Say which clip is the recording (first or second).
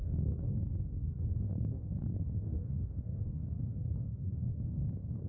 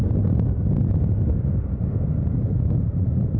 second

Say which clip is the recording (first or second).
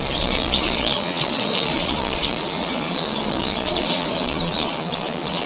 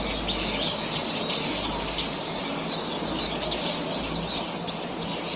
second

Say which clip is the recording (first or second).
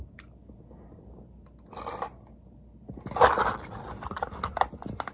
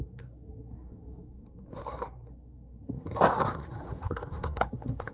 first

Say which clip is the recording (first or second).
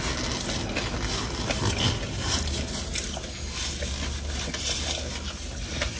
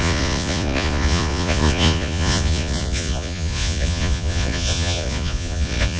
first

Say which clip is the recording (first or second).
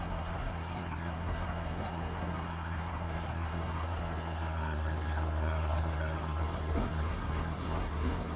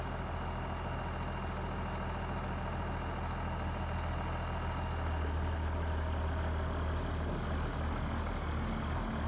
second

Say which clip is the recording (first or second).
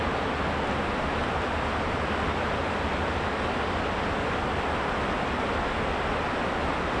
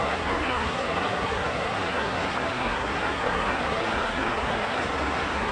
first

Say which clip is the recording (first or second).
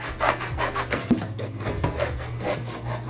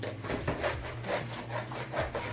second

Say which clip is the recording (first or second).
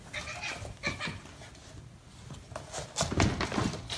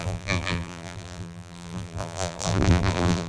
first